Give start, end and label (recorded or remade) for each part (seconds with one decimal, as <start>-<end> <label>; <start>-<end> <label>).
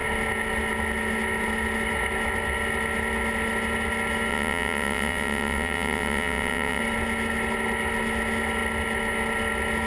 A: 0.0-4.3 recorded; 4.3-6.8 remade; 6.8-9.9 recorded